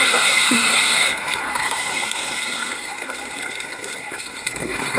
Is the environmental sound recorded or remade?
remade